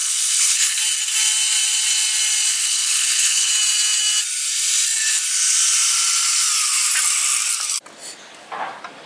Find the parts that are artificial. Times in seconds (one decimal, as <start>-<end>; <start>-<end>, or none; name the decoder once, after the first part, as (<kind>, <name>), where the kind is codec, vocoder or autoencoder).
0.0-0.8 (codec, HILCodec); 2.5-3.5

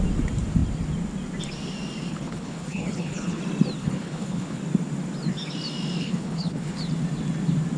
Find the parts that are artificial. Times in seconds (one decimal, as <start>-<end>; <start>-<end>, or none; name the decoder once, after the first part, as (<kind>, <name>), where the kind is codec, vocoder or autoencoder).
2.1-3.4 (codec, HILCodec); 3.8-4.6; 6.0-6.8

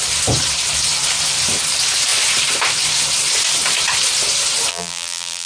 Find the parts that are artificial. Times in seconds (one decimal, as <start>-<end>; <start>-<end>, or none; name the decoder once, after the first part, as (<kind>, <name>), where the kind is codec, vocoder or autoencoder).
4.7-5.5 (vocoder, BigVGAN v2)

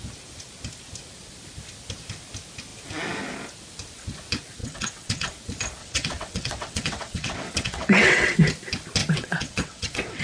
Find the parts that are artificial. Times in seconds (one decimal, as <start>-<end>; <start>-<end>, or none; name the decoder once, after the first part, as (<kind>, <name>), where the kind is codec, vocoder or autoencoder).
4.6-5.3 (vocoder, WaveNeXt); 5.8-8.4; 9.0-10.2

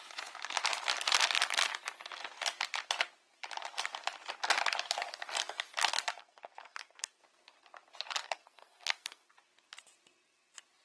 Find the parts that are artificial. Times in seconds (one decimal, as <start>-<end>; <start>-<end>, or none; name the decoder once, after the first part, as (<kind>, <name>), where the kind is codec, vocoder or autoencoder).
6.2-7.2 (codec, SNAC); 8.2-9.3